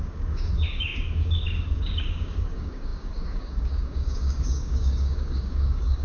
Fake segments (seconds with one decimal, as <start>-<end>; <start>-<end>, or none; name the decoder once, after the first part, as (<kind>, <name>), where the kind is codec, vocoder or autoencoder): 0.0-6.0 (codec, DAC)

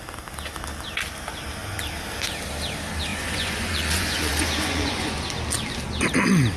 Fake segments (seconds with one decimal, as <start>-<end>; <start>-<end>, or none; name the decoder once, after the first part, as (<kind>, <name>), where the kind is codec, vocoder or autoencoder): 3.1-5.3 (vocoder, Vocos)

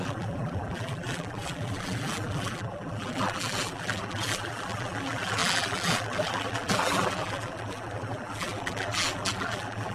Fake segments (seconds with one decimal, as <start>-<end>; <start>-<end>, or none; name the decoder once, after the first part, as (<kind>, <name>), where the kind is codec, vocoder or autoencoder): 0.0-9.9 (vocoder, BigVGAN v2)

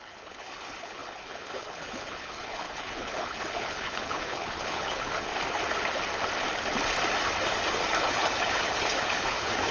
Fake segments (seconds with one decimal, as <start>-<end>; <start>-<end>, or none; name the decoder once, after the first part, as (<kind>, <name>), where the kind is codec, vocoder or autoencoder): 0.0-5.3 (codec, HILCodec); 8.1-9.7

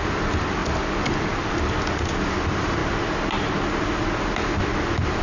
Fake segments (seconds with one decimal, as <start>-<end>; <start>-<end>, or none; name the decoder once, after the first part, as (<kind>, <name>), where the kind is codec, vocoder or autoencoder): none

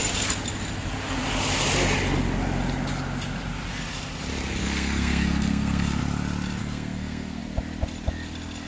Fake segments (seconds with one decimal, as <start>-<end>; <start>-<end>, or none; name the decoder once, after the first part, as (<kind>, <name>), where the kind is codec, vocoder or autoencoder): 4.6-6.0 (codec, SNAC); 6.6-7.4

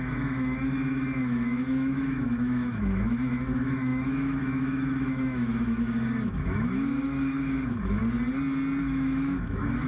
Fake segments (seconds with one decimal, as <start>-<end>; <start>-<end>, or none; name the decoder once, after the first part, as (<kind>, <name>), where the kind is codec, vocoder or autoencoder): 0.0-8.0 (autoencoder, DAC-VAE); 8.8-9.9

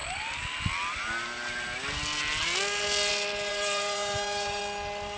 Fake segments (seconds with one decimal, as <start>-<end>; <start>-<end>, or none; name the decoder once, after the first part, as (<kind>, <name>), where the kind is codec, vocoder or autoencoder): 3.5-4.6 (vocoder, BigVGAN v2)